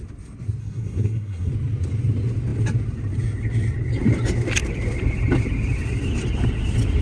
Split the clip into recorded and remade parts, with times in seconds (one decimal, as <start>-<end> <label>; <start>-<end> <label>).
0.0-0.6 recorded; 0.6-1.5 remade; 1.5-7.0 recorded